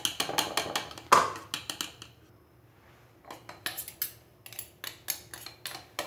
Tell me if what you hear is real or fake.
real